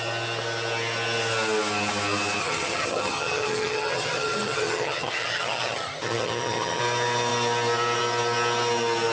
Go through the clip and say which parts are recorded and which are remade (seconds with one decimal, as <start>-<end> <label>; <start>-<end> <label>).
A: 0.0-2.4 recorded; 2.4-6.8 remade; 6.8-9.1 recorded